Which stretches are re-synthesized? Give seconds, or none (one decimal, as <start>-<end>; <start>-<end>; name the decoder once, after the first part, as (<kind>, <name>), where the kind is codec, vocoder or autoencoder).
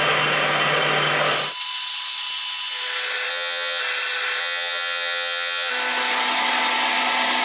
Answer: 3.3-3.8 (vocoder, HiFi-GAN); 4.4-5.7